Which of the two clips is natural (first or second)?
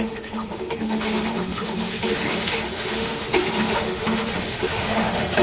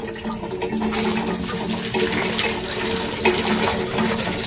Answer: second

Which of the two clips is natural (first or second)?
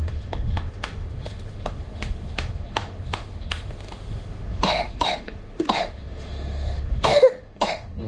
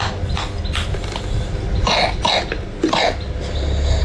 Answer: second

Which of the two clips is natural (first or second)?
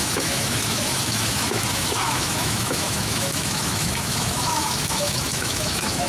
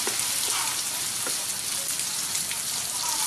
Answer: second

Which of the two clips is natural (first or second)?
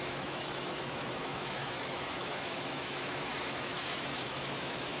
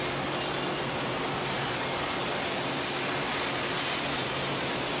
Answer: second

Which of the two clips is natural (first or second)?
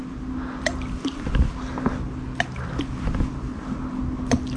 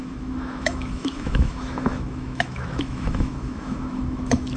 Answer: first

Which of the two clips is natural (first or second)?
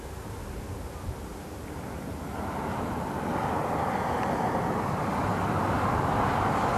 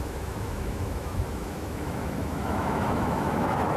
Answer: first